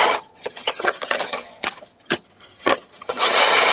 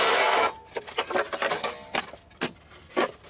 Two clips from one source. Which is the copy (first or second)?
first